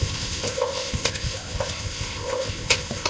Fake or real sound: fake